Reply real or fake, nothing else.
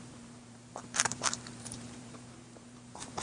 fake